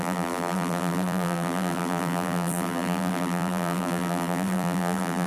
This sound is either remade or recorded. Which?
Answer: remade